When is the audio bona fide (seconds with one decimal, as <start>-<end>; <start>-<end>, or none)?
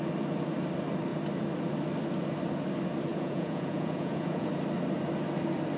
0.0-3.1; 4.5-5.8